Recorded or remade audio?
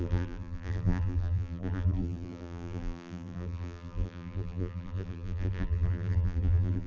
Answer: remade